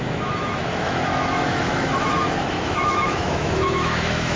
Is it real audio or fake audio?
fake